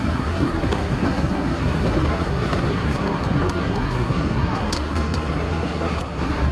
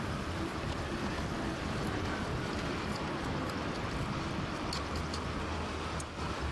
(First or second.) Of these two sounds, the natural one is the second